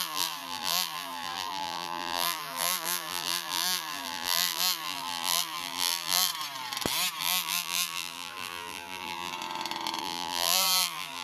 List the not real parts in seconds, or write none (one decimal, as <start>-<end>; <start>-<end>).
0.0-6.3; 7.2-9.3; 10.0-11.2